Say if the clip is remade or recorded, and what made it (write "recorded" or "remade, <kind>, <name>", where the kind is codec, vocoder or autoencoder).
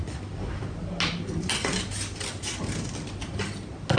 recorded